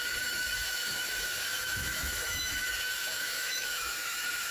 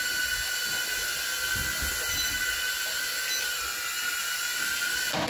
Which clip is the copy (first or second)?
first